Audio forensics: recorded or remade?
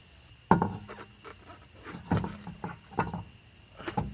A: recorded